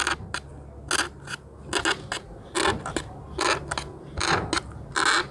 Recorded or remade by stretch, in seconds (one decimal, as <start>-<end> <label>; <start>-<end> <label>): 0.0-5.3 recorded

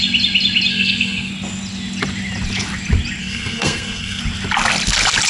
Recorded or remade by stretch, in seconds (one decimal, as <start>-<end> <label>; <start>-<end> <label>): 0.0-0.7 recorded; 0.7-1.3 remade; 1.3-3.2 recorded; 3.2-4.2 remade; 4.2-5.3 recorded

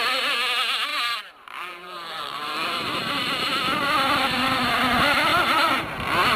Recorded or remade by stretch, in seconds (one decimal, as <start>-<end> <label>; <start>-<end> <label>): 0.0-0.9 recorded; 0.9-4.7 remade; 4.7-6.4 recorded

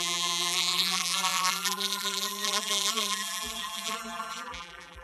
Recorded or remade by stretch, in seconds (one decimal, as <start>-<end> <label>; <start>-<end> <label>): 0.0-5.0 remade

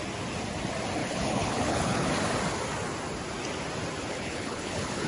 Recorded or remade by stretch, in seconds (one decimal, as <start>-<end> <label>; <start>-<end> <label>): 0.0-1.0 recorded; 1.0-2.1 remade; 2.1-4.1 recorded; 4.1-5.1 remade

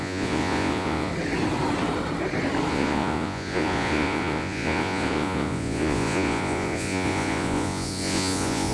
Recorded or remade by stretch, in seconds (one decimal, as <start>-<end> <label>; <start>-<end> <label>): 0.0-1.1 remade; 1.1-2.7 recorded; 2.7-8.7 remade

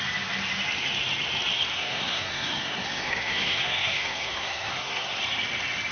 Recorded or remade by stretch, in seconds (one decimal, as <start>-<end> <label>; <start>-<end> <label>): 0.0-1.7 recorded; 1.7-5.2 remade; 5.2-5.9 recorded

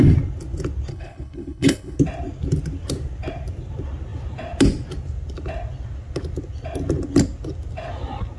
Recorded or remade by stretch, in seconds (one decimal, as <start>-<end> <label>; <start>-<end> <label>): 0.0-0.9 recorded; 0.9-2.0 remade; 2.0-8.4 recorded